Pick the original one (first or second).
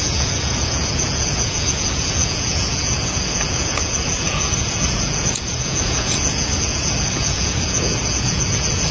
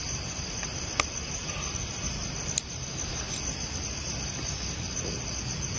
second